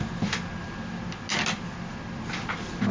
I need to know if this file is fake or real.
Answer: real